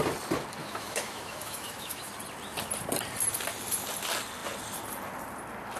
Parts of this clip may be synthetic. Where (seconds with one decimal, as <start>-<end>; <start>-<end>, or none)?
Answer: 0.6-2.1